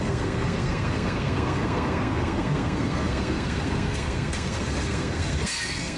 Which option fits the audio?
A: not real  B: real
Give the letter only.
A